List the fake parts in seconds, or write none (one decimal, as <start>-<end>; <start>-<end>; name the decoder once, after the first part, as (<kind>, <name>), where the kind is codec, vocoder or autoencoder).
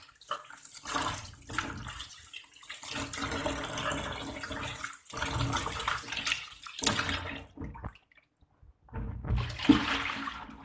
none